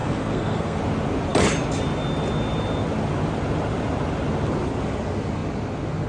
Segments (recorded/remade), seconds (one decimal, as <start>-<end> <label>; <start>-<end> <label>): 0.0-0.8 remade; 0.8-6.1 recorded